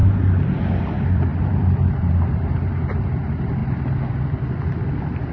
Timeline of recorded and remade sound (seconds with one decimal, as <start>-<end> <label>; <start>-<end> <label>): 0.0-3.6 remade; 3.6-4.1 recorded; 4.1-5.3 remade